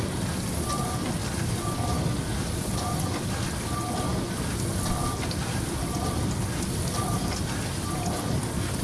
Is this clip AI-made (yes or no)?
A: no